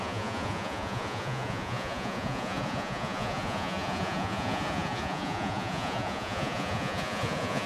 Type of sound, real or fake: fake